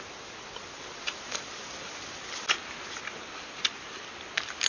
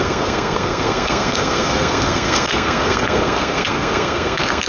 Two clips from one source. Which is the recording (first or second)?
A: first